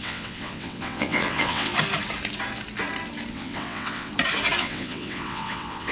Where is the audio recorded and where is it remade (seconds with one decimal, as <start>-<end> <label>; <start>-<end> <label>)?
0.0-1.7 remade; 1.7-3.3 recorded; 3.3-4.1 remade; 4.1-4.6 recorded; 4.6-5.9 remade